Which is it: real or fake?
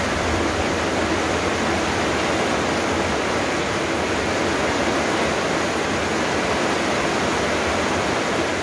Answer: real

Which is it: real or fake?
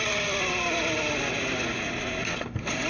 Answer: real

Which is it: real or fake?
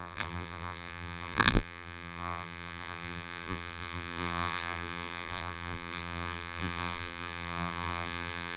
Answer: fake